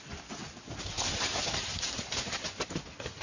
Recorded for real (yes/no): yes